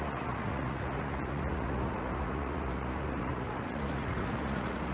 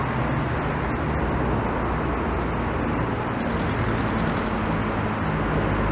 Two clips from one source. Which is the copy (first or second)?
first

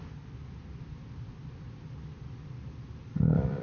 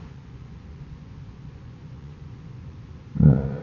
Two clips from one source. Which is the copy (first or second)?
second